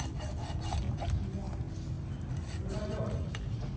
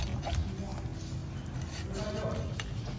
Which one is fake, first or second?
first